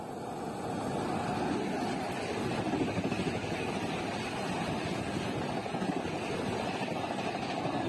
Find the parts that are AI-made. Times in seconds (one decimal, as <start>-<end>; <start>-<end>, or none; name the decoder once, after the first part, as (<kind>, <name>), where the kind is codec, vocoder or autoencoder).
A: none